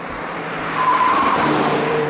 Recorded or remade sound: remade